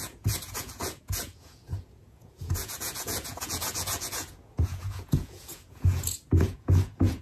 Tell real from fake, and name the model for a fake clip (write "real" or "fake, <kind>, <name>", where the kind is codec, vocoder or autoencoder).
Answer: fake, vocoder, Vocos